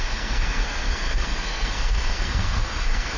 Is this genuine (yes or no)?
no